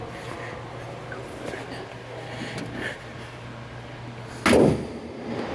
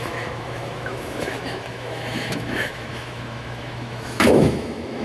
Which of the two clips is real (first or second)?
first